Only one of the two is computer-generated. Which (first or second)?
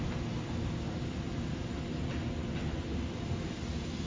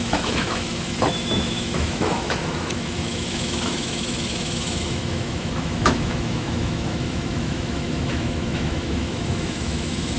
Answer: second